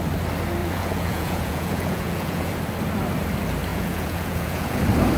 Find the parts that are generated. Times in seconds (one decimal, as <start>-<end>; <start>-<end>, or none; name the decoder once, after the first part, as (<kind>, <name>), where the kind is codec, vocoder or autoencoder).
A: 0.6-2.5 (vocoder, Vocos); 3.7-4.8